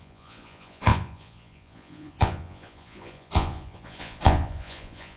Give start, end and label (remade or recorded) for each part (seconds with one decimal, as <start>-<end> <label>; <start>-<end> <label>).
0.0-5.2 remade